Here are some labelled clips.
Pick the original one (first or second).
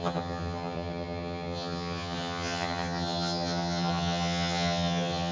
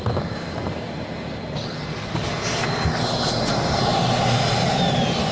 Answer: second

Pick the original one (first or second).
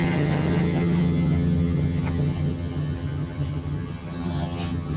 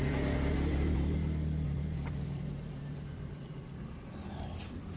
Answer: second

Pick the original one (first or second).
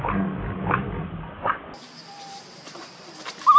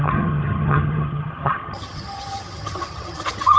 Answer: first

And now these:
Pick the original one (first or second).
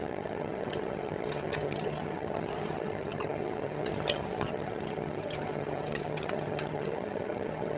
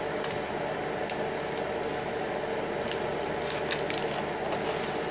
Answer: second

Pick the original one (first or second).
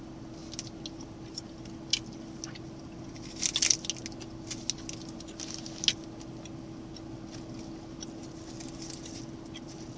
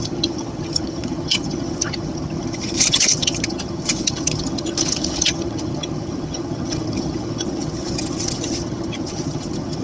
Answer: first